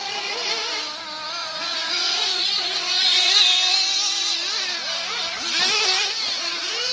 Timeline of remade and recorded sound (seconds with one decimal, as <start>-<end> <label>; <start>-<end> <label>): 0.0-0.5 remade; 0.5-1.4 recorded; 1.4-3.3 remade; 3.3-6.9 recorded